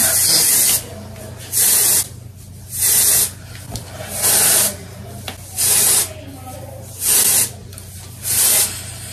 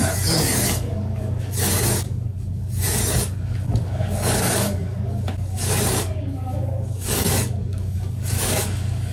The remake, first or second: second